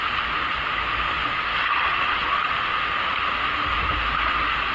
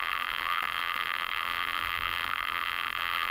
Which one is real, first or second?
first